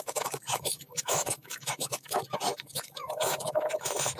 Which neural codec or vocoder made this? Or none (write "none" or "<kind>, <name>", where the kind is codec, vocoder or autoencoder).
autoencoder, DAC-VAE